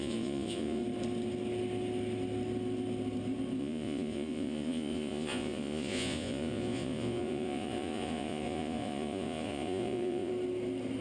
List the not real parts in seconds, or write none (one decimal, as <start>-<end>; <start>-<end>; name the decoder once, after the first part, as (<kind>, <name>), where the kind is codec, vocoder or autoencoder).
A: 0.0-0.8 (vocoder, Vocos); 3.6-10.3